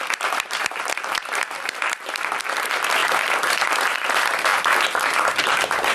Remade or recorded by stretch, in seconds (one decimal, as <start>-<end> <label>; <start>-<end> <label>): 0.0-4.5 remade; 4.5-5.4 recorded; 5.4-5.9 remade